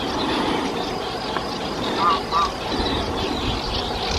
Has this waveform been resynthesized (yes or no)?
no